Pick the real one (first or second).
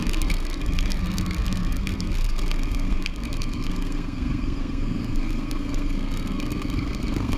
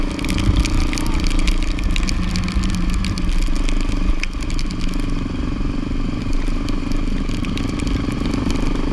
second